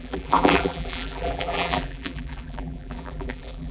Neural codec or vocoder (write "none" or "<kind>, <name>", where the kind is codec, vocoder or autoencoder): vocoder, BigVGAN v2